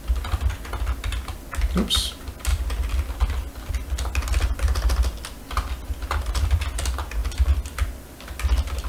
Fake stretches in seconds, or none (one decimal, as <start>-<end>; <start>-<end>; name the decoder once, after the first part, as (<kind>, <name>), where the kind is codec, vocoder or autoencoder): none